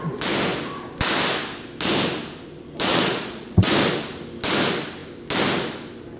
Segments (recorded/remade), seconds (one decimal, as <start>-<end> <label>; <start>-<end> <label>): 0.0-2.9 recorded; 2.9-3.7 remade; 3.7-6.2 recorded